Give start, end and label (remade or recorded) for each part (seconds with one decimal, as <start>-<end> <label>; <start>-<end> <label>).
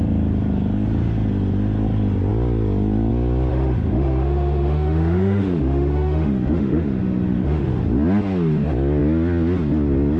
0.0-3.5 recorded; 3.5-7.8 remade; 7.8-10.2 recorded